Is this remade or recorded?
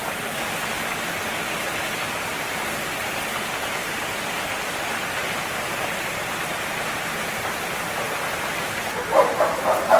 recorded